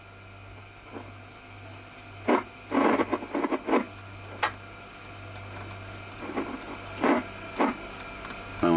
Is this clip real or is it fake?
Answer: real